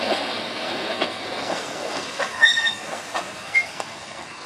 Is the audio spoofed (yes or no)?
yes